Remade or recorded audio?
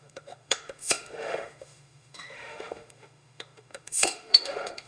remade